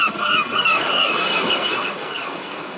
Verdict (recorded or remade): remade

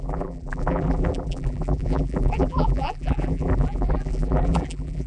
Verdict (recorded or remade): remade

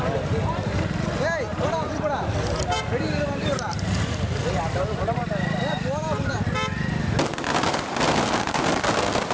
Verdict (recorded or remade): recorded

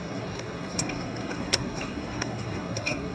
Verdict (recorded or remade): remade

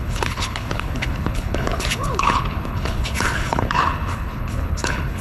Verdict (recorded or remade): remade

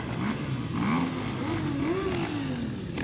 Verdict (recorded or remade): recorded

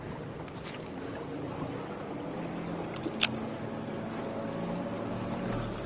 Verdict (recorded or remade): recorded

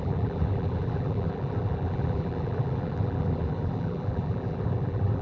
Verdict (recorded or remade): remade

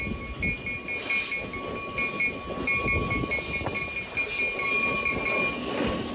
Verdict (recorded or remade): recorded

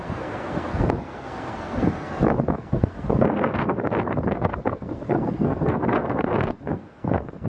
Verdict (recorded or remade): remade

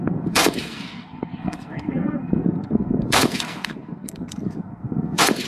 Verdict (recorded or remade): remade